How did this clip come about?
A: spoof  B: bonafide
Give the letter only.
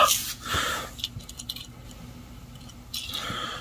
B